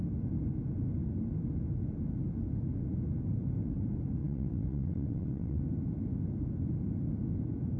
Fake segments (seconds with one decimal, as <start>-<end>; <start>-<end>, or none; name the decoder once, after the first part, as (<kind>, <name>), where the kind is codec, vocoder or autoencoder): 4.2-5.6 (vocoder, WaveNeXt)